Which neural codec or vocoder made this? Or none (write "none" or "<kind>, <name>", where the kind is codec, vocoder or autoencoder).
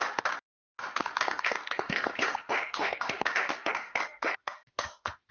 autoencoder, DAC-VAE